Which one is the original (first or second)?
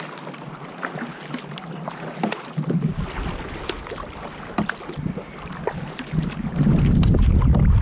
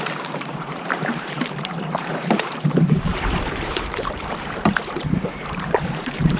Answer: first